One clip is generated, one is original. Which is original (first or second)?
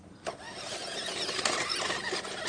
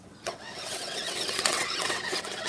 first